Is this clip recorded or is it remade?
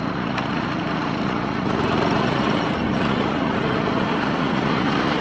remade